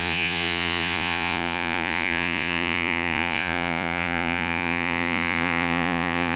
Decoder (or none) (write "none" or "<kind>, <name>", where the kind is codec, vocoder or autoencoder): vocoder, Vocos